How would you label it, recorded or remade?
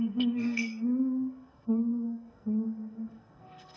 remade